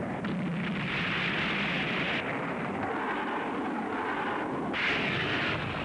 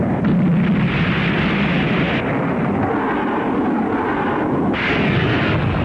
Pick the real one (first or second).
second